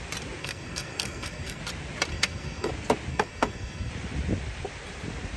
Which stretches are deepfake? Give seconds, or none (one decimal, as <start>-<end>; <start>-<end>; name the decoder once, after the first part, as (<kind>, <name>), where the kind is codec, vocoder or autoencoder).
0.4-1.6 (codec, SNAC); 2.1-2.7; 3.1-3.9